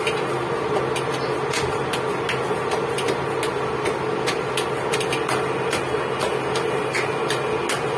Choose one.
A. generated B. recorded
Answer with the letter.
B